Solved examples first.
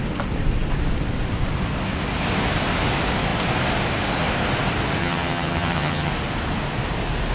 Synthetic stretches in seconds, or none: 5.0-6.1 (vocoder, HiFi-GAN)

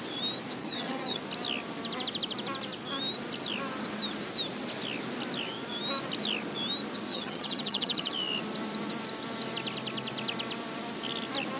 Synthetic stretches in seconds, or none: 0.6-1.2 (vocoder, HiFi-GAN); 7.1-8.1